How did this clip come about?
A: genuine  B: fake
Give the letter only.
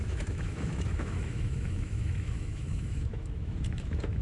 B